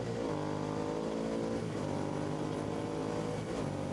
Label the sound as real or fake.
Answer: real